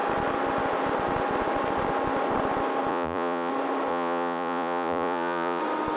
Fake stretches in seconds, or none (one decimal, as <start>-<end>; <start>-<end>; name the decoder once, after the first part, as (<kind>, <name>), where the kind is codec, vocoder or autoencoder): 2.9-3.5 (vocoder, Vocos); 3.9-5.6